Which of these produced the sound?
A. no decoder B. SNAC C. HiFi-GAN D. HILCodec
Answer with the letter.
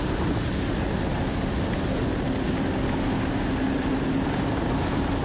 A